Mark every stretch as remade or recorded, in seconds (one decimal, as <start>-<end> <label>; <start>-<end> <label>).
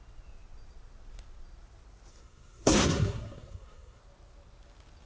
0.0-2.1 recorded; 2.1-4.0 remade; 4.0-5.1 recorded